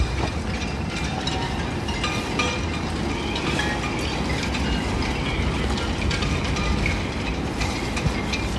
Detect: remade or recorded recorded